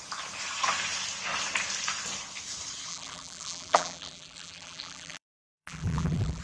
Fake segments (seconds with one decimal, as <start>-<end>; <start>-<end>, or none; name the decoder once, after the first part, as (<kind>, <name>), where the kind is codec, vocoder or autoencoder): 2.9-6.4 (vocoder, BigVGAN v2)